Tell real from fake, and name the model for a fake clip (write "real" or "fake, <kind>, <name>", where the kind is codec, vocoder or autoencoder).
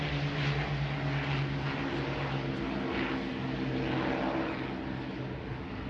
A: real